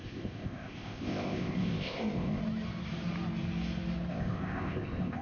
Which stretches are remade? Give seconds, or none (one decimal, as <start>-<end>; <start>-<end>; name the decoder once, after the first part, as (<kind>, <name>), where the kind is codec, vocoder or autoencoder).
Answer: 0.0-2.4 (codec, ZipCodec); 4.1-5.2